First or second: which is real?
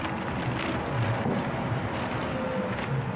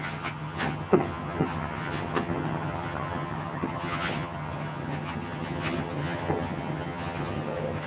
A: first